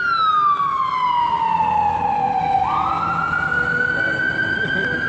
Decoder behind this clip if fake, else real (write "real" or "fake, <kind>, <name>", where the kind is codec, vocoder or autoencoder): real